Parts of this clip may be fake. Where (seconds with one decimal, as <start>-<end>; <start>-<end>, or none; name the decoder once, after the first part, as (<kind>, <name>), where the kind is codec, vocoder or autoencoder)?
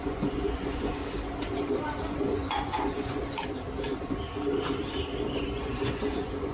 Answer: 0.0-1.0 (vocoder, Vocos); 2.1-3.2; 5.4-6.5